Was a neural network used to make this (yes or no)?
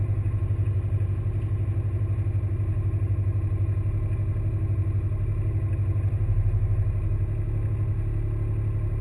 no